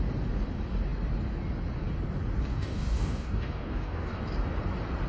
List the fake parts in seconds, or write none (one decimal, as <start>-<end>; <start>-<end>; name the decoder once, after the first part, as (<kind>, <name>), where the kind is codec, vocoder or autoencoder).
2.5-4.2 (codec, DAC)